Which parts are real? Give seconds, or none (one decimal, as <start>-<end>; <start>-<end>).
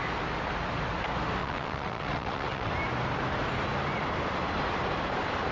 0.0-1.4; 2.7-5.5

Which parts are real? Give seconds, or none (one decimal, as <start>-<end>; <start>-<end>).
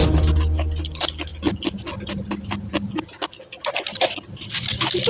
0.0-5.1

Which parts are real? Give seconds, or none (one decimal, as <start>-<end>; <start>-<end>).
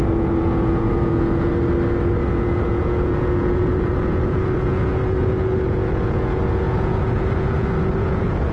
1.5-2.3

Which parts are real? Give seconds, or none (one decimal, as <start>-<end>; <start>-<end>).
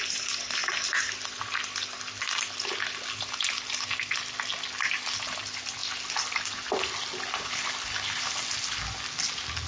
0.0-9.7